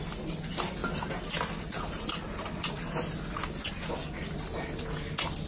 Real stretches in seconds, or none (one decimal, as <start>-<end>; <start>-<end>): 0.0-5.5